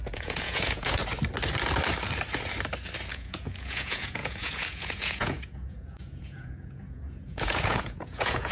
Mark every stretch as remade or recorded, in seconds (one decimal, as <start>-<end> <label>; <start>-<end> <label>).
0.0-1.0 remade; 1.0-3.1 recorded; 3.1-8.5 remade